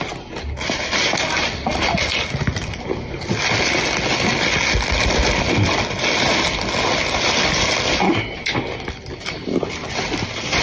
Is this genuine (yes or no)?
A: yes